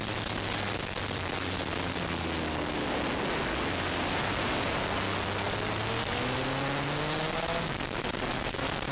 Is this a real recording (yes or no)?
yes